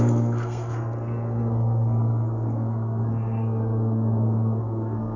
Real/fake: fake